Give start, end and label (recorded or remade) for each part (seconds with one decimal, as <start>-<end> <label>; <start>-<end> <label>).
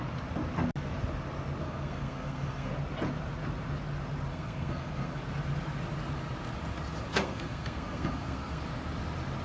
0.0-1.6 recorded; 1.6-2.7 remade; 2.7-4.3 recorded; 4.3-5.2 remade; 5.2-7.1 recorded; 7.1-8.6 remade; 8.6-9.4 recorded